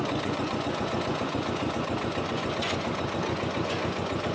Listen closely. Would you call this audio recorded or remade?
remade